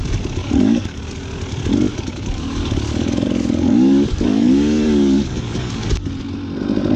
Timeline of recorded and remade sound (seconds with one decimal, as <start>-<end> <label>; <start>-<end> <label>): 0.0-0.4 recorded; 0.4-1.0 remade; 1.0-1.9 recorded; 1.9-6.1 remade; 6.1-7.0 recorded